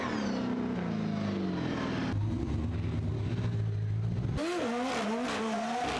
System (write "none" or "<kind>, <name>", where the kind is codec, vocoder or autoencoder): none